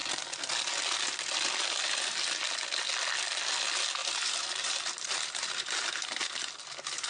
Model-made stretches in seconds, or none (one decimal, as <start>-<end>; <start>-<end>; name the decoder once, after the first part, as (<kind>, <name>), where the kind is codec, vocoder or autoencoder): 4.0-7.1 (vocoder, BigVGAN v2)